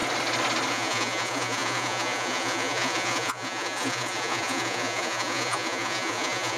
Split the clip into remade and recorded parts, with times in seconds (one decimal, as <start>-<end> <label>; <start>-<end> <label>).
0.0-0.7 recorded; 0.7-6.6 remade